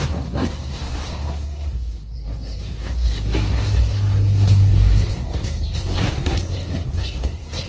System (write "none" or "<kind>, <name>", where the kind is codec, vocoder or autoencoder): codec, SNAC